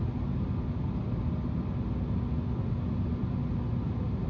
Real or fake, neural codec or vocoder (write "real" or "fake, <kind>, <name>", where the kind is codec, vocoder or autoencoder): real